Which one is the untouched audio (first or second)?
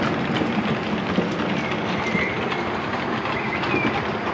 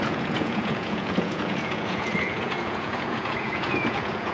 first